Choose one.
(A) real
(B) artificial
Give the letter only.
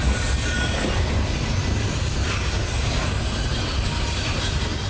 A